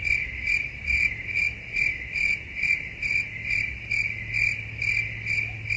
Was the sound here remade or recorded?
recorded